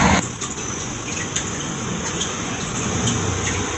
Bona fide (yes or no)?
no